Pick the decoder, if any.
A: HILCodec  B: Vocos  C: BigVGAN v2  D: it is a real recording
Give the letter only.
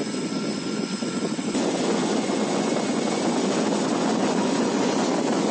B